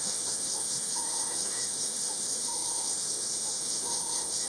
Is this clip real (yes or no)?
no